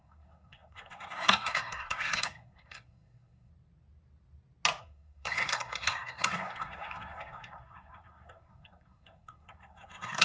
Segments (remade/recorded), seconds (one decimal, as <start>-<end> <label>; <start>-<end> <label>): 0.0-3.5 remade; 3.5-4.8 recorded; 4.8-10.2 remade